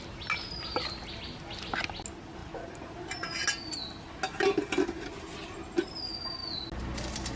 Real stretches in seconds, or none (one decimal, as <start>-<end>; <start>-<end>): 0.0-7.4